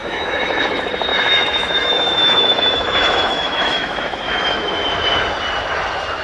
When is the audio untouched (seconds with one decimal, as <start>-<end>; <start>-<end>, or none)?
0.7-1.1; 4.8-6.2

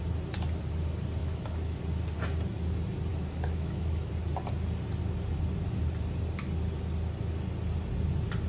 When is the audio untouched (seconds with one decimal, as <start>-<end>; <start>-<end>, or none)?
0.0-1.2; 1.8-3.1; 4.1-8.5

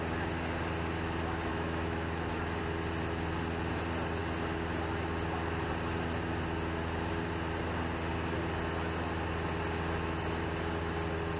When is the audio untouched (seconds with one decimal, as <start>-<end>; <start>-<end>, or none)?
0.0-1.5; 2.6-11.4